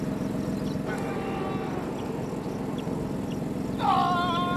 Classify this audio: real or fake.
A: real